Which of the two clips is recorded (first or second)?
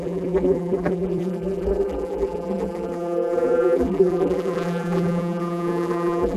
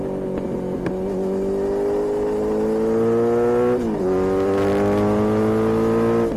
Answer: second